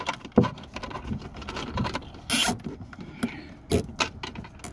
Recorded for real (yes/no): yes